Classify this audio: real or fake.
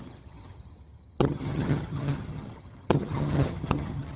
fake